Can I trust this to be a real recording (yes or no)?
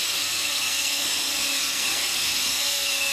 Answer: no